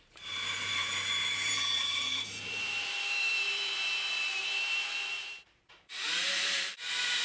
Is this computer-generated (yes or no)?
yes